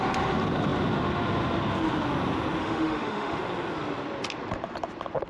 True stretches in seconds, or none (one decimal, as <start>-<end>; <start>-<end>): 0.0-2.6; 3.4-5.3